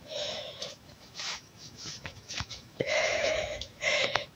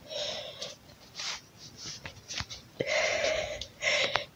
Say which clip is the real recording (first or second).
second